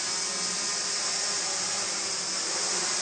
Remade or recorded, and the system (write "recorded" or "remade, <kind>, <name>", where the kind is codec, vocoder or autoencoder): recorded